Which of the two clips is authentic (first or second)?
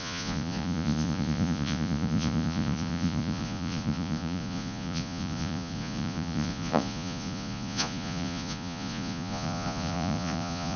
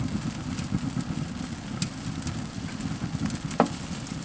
second